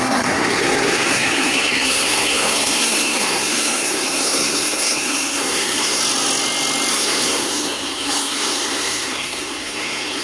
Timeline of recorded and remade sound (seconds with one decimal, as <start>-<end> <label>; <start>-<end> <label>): 0.0-6.0 remade; 6.0-6.9 recorded; 6.9-10.2 remade